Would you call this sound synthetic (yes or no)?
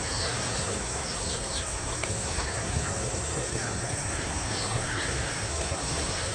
yes